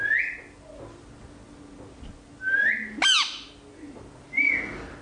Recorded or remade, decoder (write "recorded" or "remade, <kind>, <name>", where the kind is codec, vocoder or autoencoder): recorded